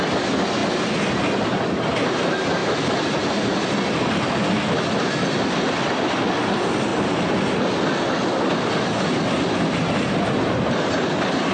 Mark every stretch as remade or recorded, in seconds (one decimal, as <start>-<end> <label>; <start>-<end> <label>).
0.0-11.5 recorded